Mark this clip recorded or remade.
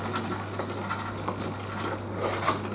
recorded